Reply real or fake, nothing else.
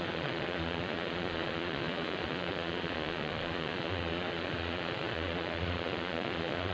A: fake